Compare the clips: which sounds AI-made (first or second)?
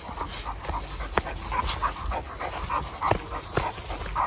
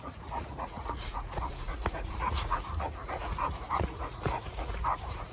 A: second